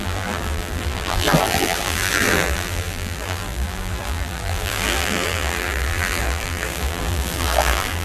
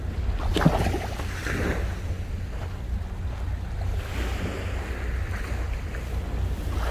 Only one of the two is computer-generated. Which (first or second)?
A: first